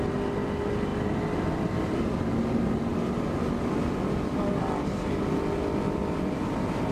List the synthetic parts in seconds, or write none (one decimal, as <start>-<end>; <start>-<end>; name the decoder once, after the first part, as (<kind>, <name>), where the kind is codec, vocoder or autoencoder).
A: none

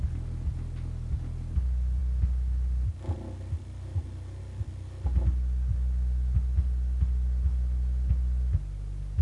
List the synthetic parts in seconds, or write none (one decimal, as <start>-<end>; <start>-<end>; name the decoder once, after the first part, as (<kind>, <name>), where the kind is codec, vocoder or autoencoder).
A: none

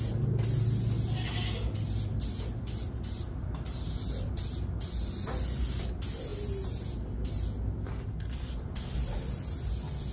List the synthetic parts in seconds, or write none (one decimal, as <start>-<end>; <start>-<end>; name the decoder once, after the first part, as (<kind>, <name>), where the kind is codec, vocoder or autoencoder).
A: none

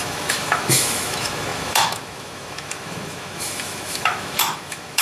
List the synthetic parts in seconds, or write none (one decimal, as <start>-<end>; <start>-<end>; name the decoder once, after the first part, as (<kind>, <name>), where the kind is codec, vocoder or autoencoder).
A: 0.0-5.0 (autoencoder, DAC-VAE)

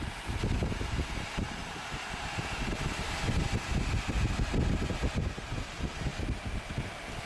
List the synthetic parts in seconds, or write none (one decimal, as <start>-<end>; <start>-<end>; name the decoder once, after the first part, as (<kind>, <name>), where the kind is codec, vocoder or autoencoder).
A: 1.6-3.0 (vocoder, BigVGAN v2)

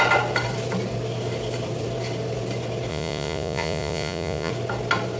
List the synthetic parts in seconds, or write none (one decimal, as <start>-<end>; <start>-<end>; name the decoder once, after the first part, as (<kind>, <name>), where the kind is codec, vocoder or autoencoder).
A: 2.9-4.5 (vocoder, Vocos)

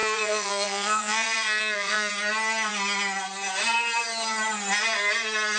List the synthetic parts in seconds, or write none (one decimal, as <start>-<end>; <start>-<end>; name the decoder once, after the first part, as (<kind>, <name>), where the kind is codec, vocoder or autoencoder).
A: 0.0-2.1 (vocoder, Vocos)

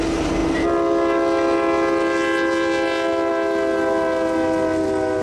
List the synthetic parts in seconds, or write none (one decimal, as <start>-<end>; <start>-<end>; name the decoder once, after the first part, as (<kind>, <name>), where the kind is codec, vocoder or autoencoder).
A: none